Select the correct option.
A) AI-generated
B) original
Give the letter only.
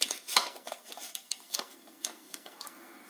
A